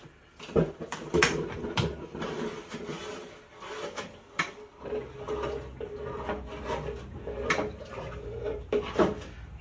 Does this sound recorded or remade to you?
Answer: remade